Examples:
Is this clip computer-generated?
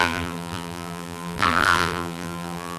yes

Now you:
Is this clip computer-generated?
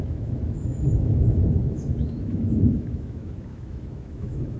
yes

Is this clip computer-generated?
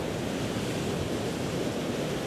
no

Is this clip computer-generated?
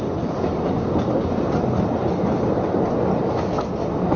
no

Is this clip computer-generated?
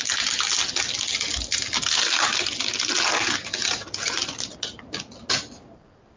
no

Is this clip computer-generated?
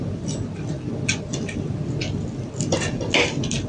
no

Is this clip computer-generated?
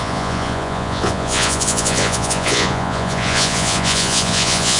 yes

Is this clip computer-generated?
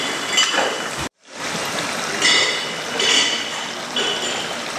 no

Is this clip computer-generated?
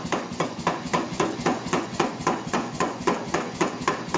yes